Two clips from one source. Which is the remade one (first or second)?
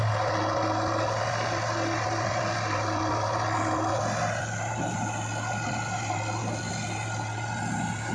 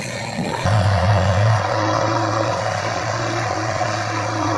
second